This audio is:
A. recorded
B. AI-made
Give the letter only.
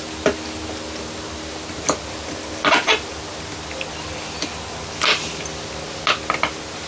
A